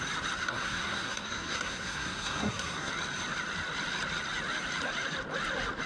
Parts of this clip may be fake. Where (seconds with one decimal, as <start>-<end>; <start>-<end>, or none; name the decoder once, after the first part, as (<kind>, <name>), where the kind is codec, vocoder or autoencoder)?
0.4-2.9 (codec, SNAC)